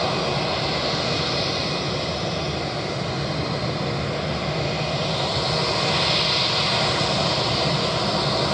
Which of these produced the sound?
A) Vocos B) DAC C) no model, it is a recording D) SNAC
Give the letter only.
C